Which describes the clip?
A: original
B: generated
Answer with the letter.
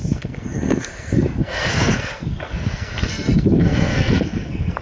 B